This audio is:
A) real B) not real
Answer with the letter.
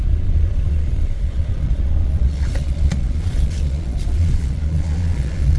B